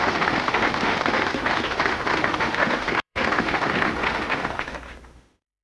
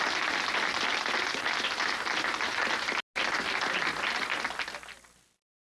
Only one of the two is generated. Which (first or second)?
first